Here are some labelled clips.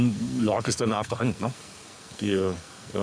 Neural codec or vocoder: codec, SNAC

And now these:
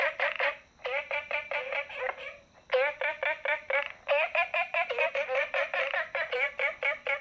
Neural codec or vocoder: vocoder, BigVGAN v2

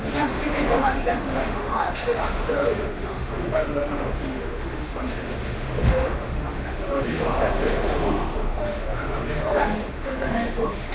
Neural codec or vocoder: autoencoder, DAC-VAE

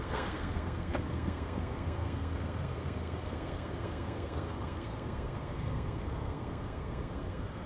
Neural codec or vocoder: codec, SNAC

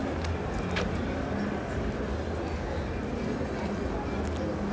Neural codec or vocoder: none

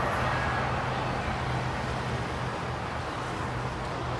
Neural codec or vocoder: none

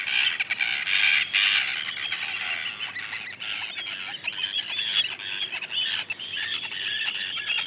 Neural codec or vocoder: none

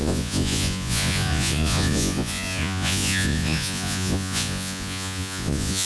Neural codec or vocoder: vocoder, Vocos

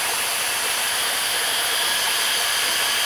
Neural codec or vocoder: none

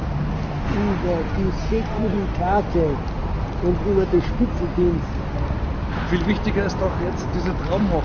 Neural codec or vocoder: none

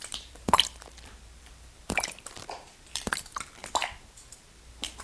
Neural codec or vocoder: vocoder, BigVGAN v2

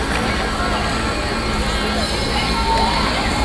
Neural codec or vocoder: none